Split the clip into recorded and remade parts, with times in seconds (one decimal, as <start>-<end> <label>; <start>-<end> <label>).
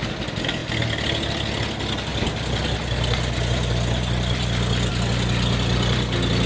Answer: 0.0-6.5 recorded